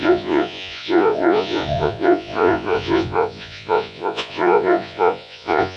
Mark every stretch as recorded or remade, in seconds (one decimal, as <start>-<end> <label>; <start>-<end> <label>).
0.0-5.8 remade